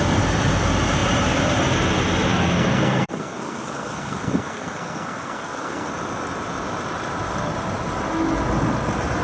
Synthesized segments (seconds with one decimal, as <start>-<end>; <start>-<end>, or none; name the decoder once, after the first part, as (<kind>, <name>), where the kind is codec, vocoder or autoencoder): 2.3-5.9 (codec, SNAC)